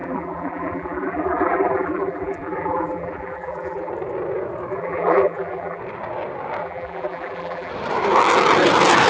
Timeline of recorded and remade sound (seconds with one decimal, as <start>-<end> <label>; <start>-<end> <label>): 0.0-3.9 remade; 3.9-4.7 recorded; 4.7-5.8 remade; 5.8-6.6 recorded; 6.6-7.7 remade; 7.7-9.1 recorded